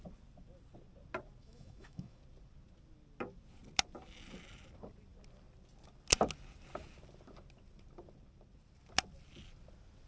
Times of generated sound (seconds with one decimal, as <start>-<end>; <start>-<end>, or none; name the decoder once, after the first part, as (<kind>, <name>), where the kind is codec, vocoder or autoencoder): 1.4-2.2 (autoencoder, DAC-VAE)